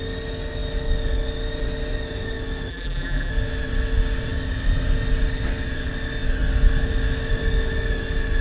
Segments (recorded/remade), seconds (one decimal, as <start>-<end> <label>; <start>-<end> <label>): 0.0-2.7 recorded; 2.7-3.3 remade; 3.3-8.4 recorded